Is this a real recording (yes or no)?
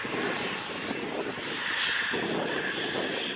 yes